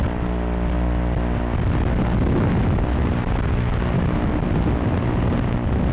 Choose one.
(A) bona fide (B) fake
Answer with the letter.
A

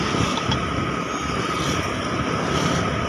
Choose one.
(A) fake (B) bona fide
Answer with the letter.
B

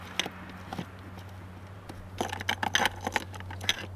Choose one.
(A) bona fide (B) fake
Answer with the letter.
A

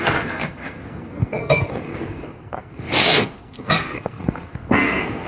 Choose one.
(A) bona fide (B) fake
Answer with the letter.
B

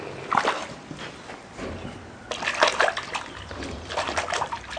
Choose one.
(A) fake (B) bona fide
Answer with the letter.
B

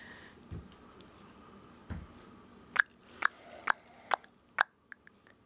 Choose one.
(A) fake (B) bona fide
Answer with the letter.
B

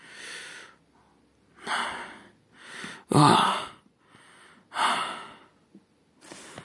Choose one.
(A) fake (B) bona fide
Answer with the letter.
B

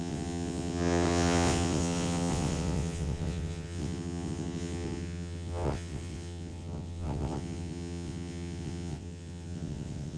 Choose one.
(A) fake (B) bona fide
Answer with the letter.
A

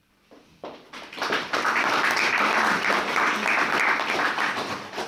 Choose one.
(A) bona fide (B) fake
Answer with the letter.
B